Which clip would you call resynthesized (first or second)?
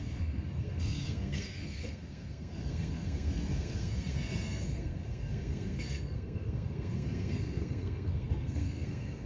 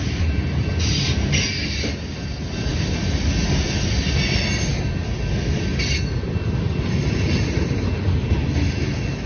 first